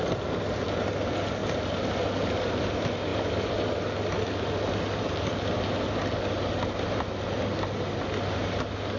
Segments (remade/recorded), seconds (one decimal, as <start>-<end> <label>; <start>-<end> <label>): 0.0-9.0 recorded